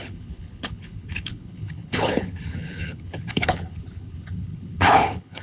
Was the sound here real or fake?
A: fake